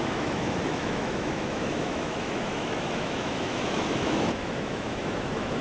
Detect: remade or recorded remade